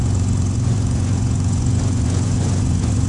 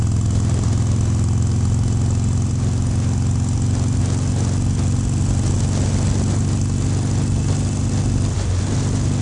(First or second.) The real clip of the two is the second